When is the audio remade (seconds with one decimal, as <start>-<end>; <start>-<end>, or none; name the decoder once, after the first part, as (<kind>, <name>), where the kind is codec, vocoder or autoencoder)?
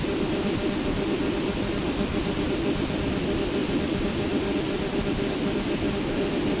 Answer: none